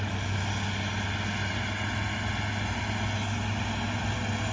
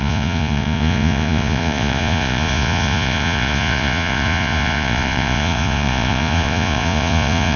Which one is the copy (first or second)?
second